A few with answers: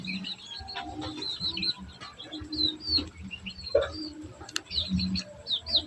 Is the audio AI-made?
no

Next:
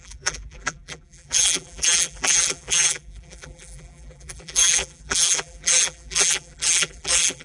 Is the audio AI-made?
yes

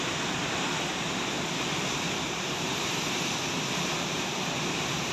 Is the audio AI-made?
no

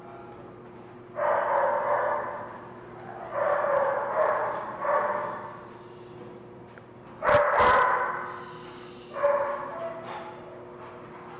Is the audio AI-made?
no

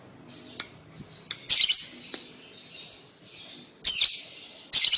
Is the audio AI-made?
no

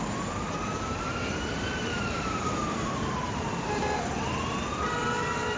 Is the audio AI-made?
yes